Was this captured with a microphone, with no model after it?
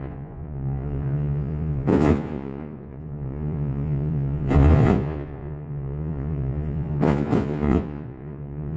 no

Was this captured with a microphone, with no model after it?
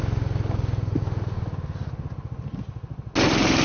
yes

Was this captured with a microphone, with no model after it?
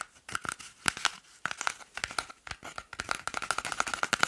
yes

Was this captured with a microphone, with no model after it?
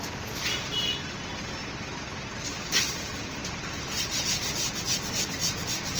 yes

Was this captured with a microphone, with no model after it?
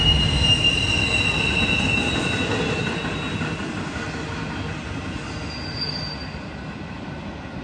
yes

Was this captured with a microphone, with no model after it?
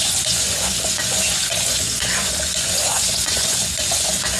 no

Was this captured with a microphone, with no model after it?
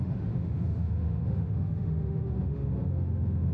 no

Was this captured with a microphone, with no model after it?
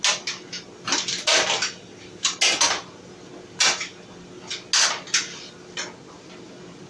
yes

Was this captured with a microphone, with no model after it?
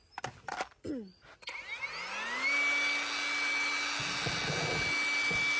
yes